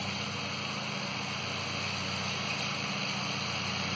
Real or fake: real